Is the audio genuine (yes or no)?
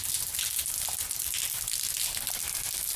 yes